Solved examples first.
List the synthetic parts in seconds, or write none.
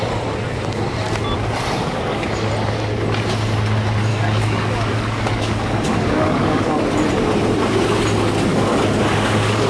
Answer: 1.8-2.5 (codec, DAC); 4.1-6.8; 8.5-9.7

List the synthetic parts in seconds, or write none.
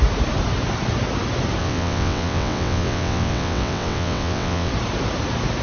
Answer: 1.6-4.7 (vocoder, WaveNeXt)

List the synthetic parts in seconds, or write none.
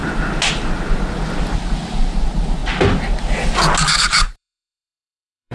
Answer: 1.7-2.6 (vocoder, BigVGAN v2); 4.1-5.5